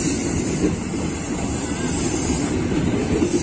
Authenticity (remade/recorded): recorded